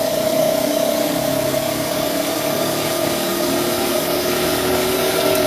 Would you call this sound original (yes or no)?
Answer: no